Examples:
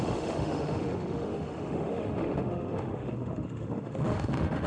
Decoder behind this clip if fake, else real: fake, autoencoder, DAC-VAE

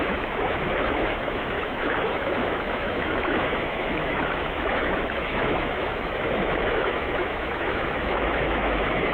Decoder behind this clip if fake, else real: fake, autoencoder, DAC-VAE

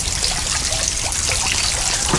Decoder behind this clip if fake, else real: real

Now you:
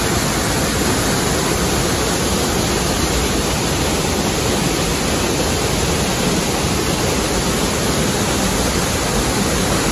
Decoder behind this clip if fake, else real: real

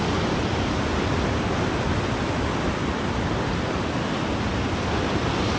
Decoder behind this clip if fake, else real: real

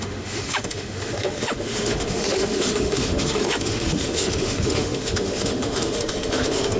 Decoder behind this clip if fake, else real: fake, autoencoder, DAC-VAE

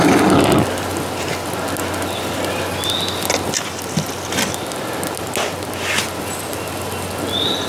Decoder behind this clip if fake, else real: real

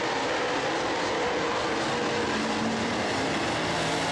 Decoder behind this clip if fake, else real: real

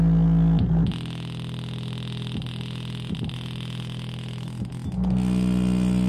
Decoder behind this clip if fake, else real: real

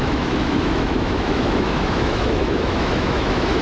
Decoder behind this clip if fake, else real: fake, autoencoder, DAC-VAE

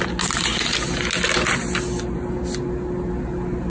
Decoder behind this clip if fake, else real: real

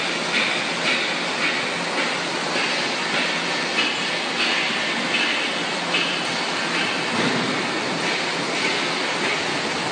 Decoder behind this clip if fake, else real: real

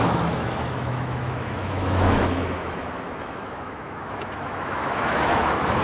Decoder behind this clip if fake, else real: fake, autoencoder, DAC-VAE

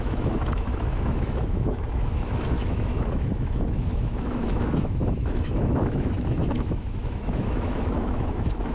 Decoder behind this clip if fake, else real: fake, autoencoder, DAC-VAE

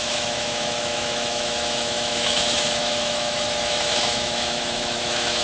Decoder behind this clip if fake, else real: fake, autoencoder, DAC-VAE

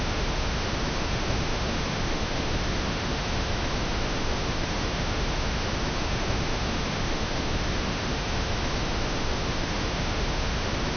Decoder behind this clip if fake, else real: fake, autoencoder, DAC-VAE